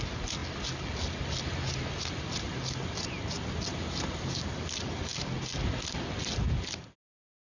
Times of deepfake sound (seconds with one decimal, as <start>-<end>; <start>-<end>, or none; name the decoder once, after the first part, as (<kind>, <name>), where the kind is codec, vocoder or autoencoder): none